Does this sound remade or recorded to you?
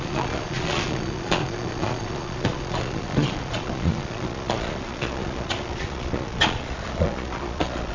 remade